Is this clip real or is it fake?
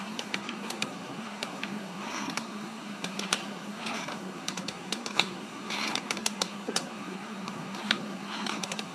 fake